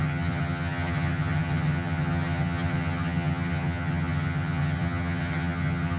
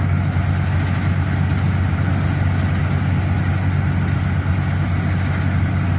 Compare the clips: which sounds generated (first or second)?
first